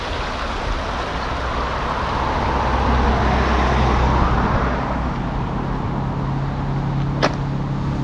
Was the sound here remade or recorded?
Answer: recorded